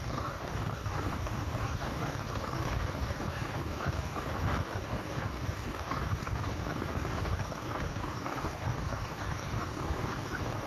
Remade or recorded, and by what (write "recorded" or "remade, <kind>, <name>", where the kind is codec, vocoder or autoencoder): remade, codec, DAC